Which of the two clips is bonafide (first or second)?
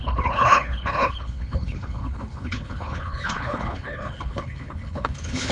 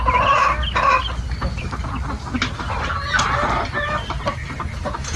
second